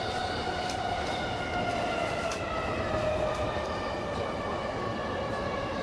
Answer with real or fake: real